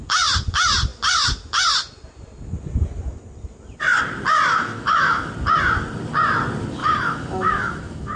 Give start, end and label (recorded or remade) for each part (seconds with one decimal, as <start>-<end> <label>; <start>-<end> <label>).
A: 0.0-4.6 recorded; 4.6-5.3 remade; 5.3-6.8 recorded; 6.8-8.2 remade